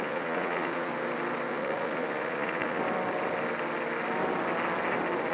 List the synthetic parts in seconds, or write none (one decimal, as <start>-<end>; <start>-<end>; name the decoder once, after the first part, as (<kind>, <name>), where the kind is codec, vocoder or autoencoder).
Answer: 0.0-0.9 (vocoder, Vocos); 1.5-2.8